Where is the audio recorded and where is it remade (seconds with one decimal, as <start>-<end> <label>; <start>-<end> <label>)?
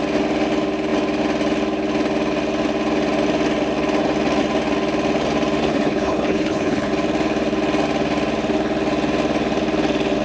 0.0-5.7 recorded; 5.7-6.9 remade; 6.9-10.2 recorded